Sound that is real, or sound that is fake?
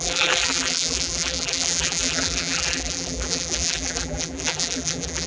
fake